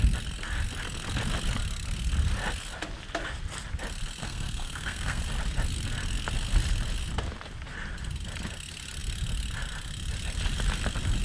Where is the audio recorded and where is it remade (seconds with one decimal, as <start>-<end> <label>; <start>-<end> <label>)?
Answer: 0.0-4.2 recorded; 4.2-5.2 remade; 5.2-11.2 recorded